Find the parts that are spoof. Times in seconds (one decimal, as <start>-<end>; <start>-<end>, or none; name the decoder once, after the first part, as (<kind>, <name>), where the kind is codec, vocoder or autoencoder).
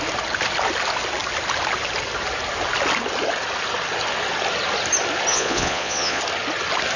5.3-6.2 (vocoder, Vocos)